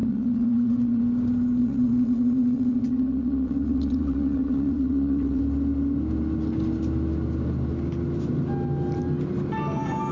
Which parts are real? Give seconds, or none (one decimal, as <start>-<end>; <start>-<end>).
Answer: 1.0-1.6; 5.4-10.1